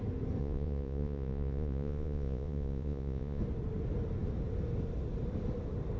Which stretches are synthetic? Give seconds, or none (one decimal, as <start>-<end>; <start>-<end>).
0.4-3.4

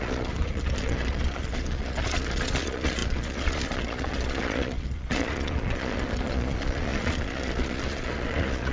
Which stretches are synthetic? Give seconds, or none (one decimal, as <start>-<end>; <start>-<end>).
0.0-8.7

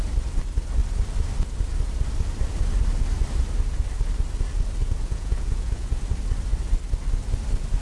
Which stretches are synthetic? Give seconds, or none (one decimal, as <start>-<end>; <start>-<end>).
4.8-6.0

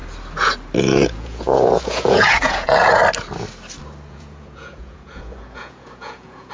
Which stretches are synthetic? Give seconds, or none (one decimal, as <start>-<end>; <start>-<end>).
0.8-3.0; 4.1-6.5

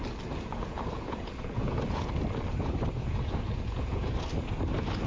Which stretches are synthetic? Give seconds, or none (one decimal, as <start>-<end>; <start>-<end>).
0.5-2.1; 3.0-4.2

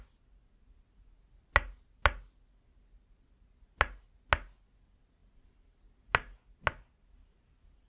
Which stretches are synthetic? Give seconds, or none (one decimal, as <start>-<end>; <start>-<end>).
none

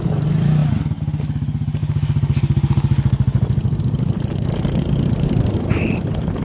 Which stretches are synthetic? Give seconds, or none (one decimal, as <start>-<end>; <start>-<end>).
none

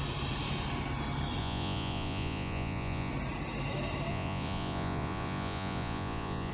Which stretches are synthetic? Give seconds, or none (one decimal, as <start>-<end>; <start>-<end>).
1.4-3.1; 4.1-6.5